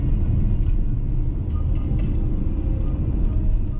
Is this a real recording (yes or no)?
yes